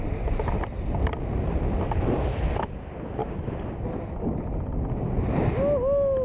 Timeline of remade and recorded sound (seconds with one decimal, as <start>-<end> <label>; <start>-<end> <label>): 0.0-3.2 recorded; 3.2-5.0 remade; 5.0-6.2 recorded